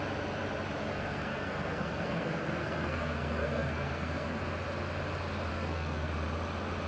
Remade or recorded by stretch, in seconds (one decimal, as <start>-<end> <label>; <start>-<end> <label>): 0.0-0.8 recorded; 0.8-4.4 remade; 4.4-5.5 recorded; 5.5-6.1 remade; 6.1-6.9 recorded

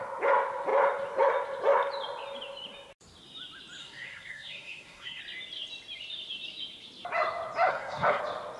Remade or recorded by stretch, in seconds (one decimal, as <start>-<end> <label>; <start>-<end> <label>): 0.0-3.8 recorded; 3.8-5.2 remade; 5.2-7.7 recorded; 7.7-8.2 remade; 8.2-8.6 recorded

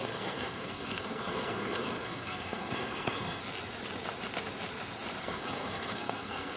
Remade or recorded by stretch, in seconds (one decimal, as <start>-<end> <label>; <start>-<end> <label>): 0.0-3.4 remade; 3.4-5.2 recorded; 5.2-6.6 remade

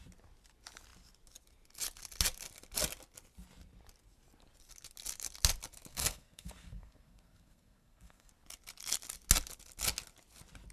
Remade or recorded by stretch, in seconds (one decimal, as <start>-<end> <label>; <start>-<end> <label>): 0.0-5.9 recorded; 5.9-8.3 remade; 8.3-10.7 recorded

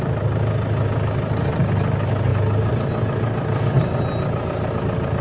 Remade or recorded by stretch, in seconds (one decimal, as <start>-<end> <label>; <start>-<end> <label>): 0.0-5.2 recorded

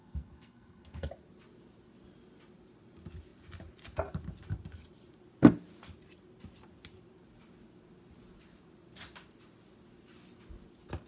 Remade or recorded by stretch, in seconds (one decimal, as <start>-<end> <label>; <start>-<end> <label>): 0.0-1.1 remade; 1.1-11.1 recorded